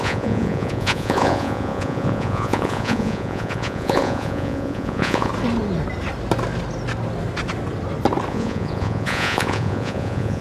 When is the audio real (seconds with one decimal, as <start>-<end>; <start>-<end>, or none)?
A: 5.3-8.3